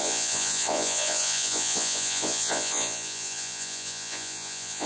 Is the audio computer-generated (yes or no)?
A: yes